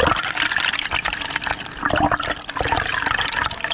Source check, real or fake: real